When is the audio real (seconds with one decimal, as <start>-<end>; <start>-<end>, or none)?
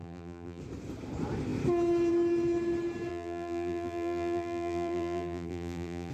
0.6-3.1